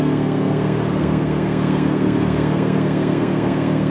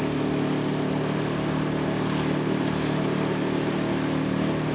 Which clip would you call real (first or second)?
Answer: second